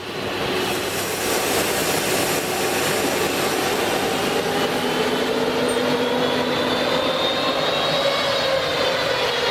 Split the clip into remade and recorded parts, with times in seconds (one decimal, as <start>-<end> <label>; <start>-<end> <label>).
0.0-9.5 recorded